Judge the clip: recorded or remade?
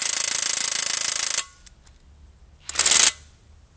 recorded